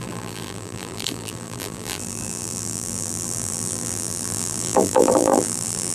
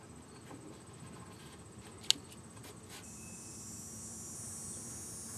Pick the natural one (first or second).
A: second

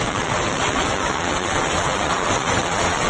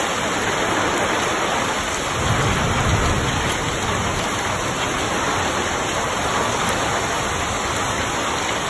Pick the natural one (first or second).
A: second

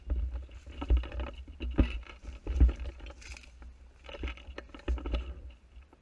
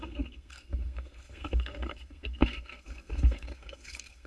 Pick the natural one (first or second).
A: first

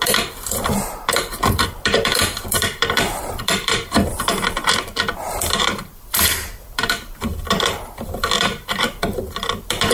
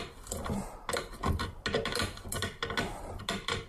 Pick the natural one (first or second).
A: second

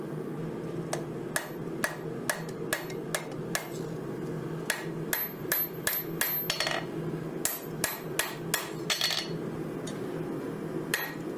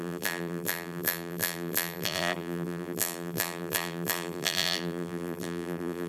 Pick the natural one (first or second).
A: first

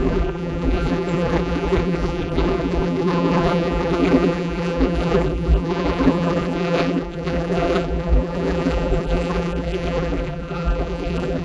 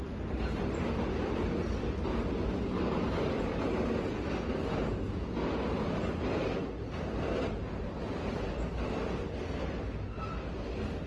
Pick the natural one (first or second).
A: second